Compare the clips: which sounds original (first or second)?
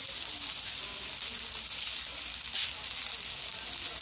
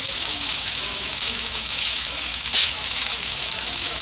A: first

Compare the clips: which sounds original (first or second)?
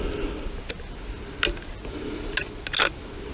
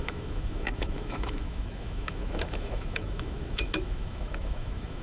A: first